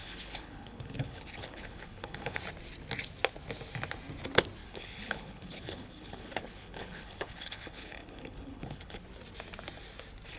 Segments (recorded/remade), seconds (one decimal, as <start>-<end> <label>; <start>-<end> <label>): 0.0-2.4 remade; 2.4-4.6 recorded; 4.6-9.0 remade; 9.0-10.4 recorded